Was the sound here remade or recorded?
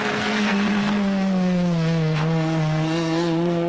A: remade